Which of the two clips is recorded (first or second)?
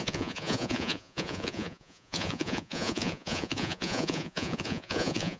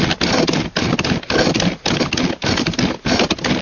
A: second